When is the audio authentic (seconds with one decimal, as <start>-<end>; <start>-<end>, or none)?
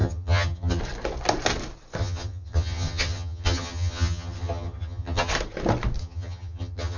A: 0.8-2.0; 5.3-6.0